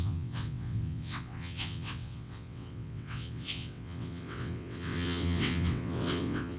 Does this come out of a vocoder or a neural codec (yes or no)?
yes